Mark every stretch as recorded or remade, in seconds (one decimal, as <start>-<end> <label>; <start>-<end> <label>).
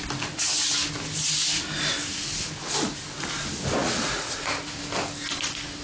0.0-3.8 recorded; 3.8-4.8 remade; 4.8-5.8 recorded